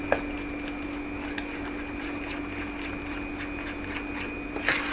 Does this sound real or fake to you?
real